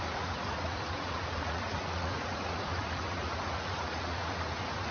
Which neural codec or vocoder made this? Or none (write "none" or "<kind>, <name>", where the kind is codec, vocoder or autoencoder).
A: vocoder, Vocos